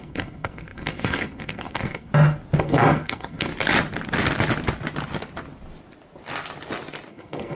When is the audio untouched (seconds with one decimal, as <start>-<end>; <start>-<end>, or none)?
2.1-2.6; 3.5-7.1